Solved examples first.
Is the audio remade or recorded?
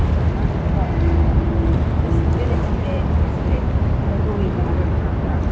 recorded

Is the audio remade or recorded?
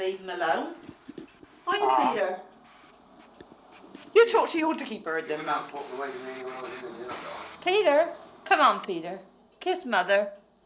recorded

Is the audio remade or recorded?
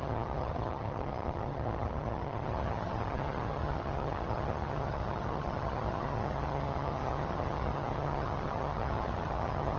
remade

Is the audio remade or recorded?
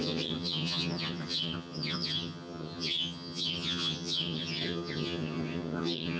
remade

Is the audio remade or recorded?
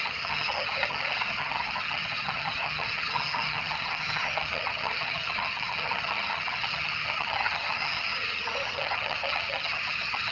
remade